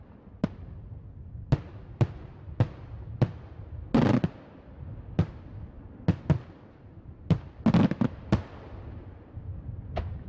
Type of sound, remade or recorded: recorded